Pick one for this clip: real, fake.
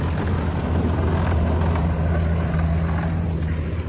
real